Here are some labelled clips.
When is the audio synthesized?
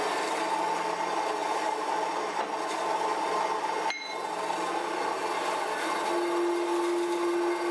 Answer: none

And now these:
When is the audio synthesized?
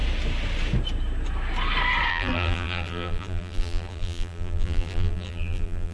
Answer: 2.1-5.9 (vocoder, BigVGAN v2)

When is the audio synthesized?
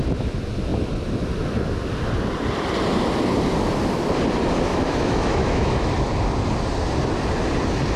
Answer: 4.7-5.9 (autoencoder, DAC-VAE)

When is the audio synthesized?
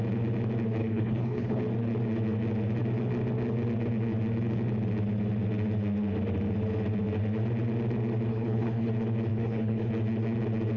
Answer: 0.8-1.6 (codec, HILCodec); 8.3-8.9; 9.3-9.9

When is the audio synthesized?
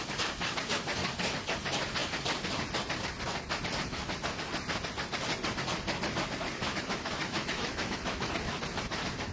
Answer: 6.6-8.3 (autoencoder, DAC-VAE)